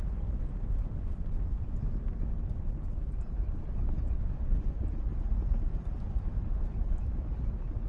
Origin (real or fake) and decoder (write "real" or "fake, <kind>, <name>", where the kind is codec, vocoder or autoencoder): real